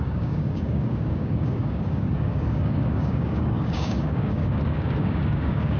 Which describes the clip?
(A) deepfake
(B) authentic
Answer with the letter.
A